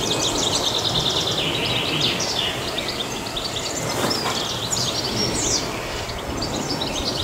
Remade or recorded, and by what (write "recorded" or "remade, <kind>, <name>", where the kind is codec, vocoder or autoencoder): recorded